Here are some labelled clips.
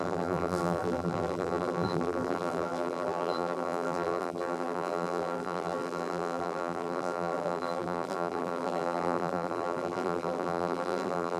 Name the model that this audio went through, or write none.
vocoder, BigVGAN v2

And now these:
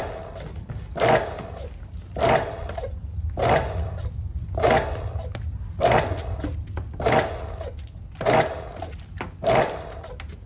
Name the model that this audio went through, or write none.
none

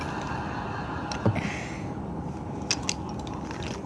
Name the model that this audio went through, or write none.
none